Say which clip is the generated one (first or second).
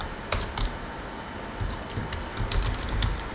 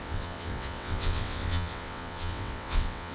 second